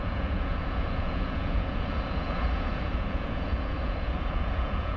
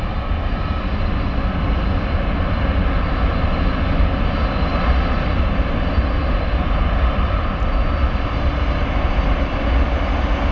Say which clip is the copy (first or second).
first